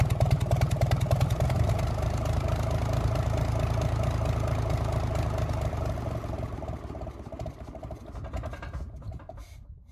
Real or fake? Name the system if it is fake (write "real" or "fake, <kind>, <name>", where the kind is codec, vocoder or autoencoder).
real